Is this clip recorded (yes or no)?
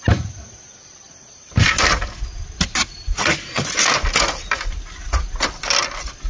yes